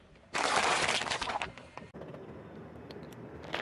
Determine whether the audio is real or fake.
real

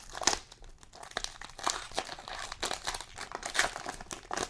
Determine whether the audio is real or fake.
real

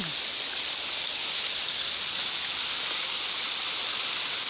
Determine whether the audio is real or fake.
real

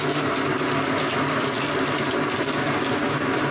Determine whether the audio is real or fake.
real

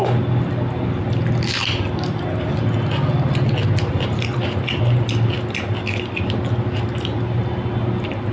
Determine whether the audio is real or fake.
real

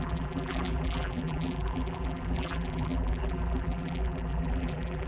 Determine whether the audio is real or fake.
fake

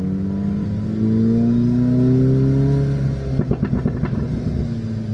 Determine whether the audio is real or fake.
real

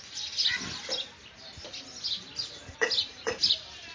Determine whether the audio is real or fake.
real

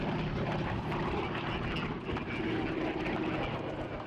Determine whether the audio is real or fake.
real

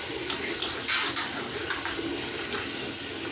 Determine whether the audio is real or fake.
real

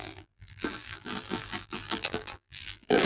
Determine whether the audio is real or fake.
fake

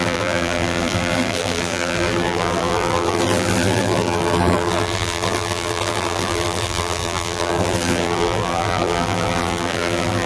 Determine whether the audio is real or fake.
fake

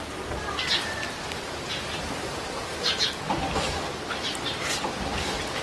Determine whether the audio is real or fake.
real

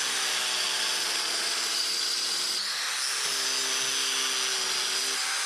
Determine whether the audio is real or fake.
real